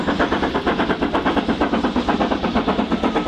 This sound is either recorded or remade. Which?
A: recorded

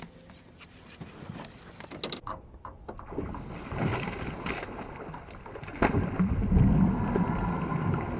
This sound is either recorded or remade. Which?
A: recorded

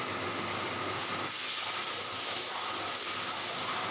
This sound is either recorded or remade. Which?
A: recorded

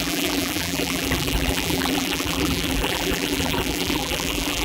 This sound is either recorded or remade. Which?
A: remade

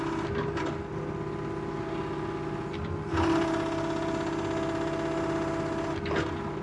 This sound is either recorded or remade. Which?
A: recorded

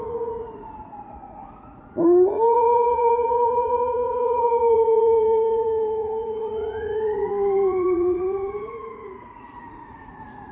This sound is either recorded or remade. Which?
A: remade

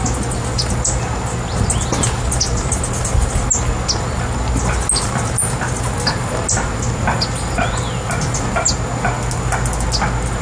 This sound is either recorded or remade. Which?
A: recorded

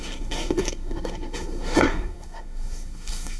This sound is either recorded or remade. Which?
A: remade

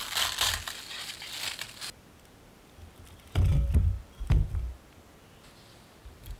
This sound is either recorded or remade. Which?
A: recorded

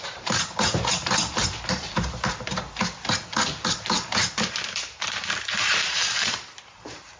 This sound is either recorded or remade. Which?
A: remade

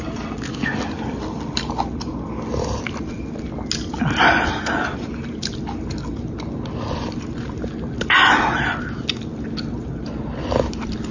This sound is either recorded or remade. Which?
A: recorded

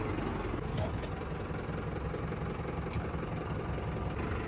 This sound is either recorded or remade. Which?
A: recorded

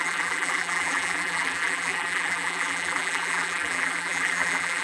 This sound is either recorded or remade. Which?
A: remade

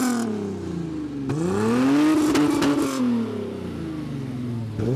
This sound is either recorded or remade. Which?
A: recorded